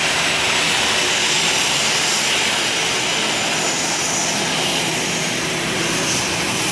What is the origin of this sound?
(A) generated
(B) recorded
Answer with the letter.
B